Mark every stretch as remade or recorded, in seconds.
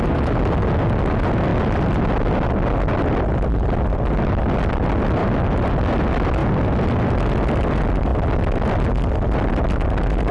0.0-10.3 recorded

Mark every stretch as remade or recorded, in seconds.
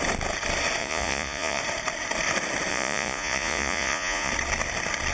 0.0-0.8 recorded; 0.8-1.6 remade; 1.6-2.7 recorded; 2.7-4.3 remade; 4.3-5.1 recorded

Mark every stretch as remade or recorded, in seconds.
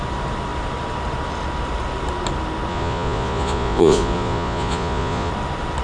0.0-2.7 recorded; 2.7-5.3 remade; 5.3-5.8 recorded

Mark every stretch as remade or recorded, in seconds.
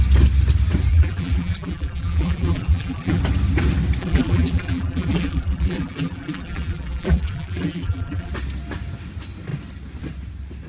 0.0-0.9 recorded; 0.9-3.2 remade; 3.2-4.0 recorded; 4.0-8.3 remade; 8.3-10.7 recorded